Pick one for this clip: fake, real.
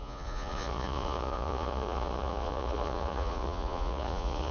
fake